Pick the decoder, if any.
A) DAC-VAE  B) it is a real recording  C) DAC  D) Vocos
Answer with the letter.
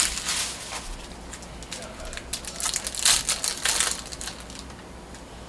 B